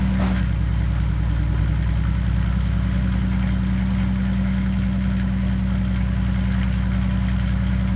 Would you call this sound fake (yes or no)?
no